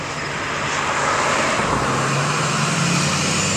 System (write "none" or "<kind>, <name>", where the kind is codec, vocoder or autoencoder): none